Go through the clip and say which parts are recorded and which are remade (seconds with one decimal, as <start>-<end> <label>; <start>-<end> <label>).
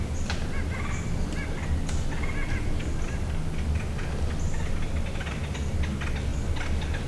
0.0-7.1 recorded